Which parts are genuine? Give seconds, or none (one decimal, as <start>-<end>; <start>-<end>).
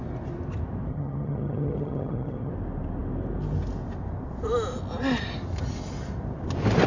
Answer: 0.0-0.9; 2.5-6.9